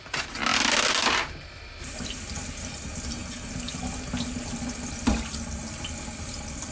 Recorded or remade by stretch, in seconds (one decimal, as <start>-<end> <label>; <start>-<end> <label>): 0.0-6.7 recorded

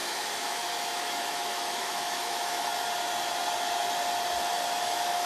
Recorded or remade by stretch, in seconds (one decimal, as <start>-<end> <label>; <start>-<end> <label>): 0.0-2.7 remade; 2.7-4.8 recorded; 4.8-5.3 remade

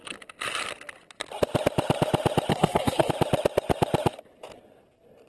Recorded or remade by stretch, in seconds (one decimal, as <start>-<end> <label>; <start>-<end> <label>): 0.0-2.5 recorded; 2.5-3.1 remade; 3.1-5.3 recorded

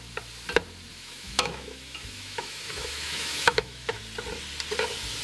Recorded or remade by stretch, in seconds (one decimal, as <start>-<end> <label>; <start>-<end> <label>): 0.0-0.9 recorded; 0.9-4.0 remade; 4.0-5.2 recorded

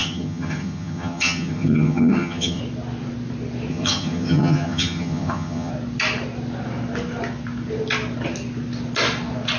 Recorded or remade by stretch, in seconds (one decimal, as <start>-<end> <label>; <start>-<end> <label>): 0.0-2.6 remade; 2.6-3.7 recorded; 3.7-5.7 remade; 5.7-9.6 recorded

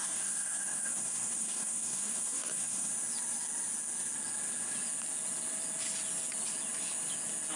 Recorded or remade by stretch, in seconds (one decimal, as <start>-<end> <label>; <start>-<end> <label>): 0.0-2.9 remade; 2.9-7.6 recorded